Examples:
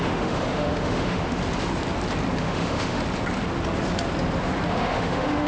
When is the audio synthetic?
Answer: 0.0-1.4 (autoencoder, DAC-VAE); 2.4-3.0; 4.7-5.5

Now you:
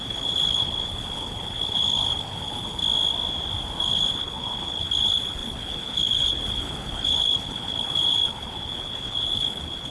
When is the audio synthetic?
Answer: 0.0-2.8 (codec, HILCodec); 3.8-9.9

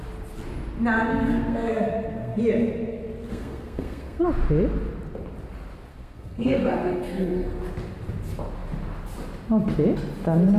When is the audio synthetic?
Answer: 1.1-2.4 (codec, SNAC); 3.3-4.2; 5.9-7.6

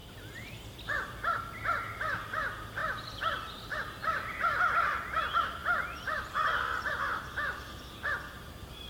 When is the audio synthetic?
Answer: 0.0-1.4 (vocoder, BigVGAN v2); 2.8-3.6; 4.0-4.6; 5.6-6.9

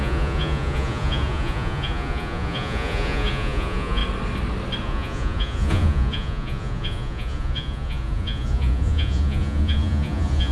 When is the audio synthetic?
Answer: 0.0-4.0 (vocoder, Vocos); 4.8-10.5

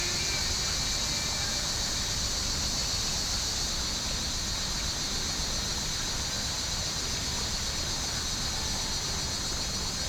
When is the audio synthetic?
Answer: 5.7-8.9 (vocoder, BigVGAN v2)

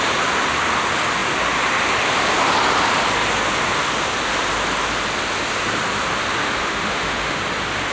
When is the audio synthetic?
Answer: 6.6-7.4 (autoencoder, DAC-VAE)

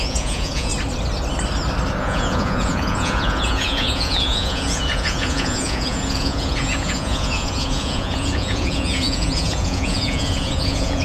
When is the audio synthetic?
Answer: 0.0-0.7 (vocoder, Vocos); 2.0-11.0